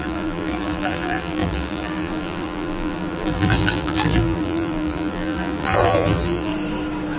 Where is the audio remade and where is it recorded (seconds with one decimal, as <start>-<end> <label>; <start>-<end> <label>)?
0.0-6.5 remade; 6.5-7.2 recorded